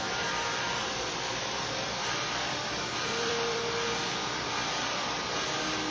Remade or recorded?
remade